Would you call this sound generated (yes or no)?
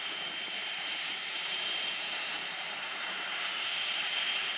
yes